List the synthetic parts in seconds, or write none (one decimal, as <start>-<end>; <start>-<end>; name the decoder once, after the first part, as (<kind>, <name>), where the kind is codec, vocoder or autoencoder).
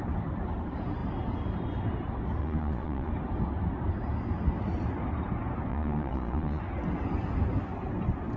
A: 2.4-3.1 (vocoder, Vocos); 5.7-6.6